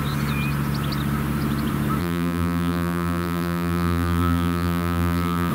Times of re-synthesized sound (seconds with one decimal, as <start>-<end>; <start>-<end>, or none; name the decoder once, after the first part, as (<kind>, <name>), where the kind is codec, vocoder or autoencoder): 2.0-5.5 (vocoder, BigVGAN v2)